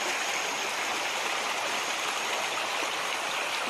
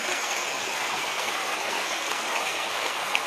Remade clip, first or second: second